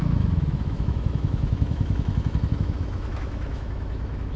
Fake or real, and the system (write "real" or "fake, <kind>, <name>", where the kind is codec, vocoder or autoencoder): fake, autoencoder, DAC-VAE